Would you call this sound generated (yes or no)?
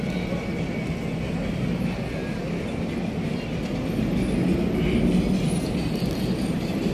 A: no